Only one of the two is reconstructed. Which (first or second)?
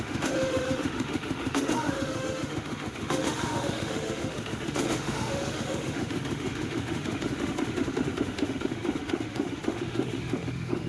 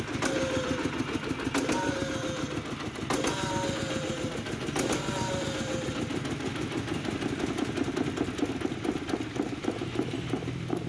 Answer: first